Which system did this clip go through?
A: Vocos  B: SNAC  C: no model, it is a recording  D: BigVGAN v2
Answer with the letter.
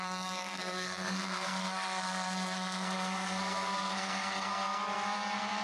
B